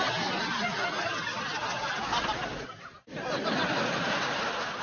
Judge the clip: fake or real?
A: real